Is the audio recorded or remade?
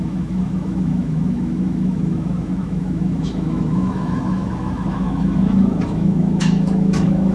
remade